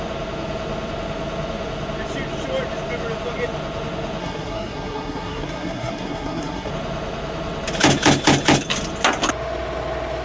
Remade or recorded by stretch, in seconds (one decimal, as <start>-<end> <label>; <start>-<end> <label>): 0.0-4.2 recorded; 4.2-6.7 remade; 6.7-10.2 recorded

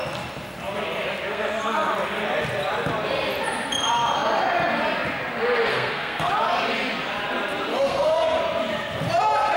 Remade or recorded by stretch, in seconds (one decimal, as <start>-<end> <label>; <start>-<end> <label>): 0.0-1.3 recorded; 1.3-1.9 remade; 1.9-5.7 recorded; 5.7-6.3 remade; 6.3-7.7 recorded; 7.7-8.4 remade; 8.4-9.6 recorded

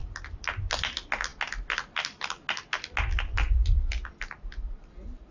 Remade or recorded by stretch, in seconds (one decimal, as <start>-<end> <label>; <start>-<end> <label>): 0.0-5.3 recorded

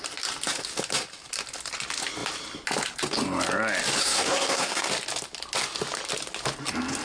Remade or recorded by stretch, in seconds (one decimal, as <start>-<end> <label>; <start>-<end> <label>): 0.0-4.0 recorded; 4.0-4.9 remade; 4.9-7.0 recorded

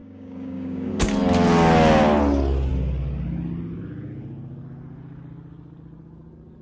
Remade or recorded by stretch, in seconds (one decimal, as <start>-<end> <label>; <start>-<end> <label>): 0.0-0.9 remade; 0.9-6.6 recorded

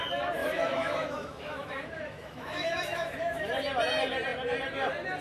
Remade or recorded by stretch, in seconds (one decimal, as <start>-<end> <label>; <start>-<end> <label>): 0.0-0.4 recorded; 0.4-3.5 remade; 3.5-5.2 recorded